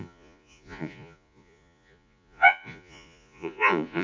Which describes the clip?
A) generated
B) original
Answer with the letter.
A